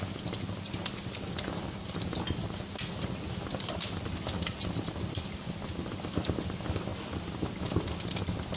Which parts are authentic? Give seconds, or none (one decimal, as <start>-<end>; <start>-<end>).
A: 0.0-8.6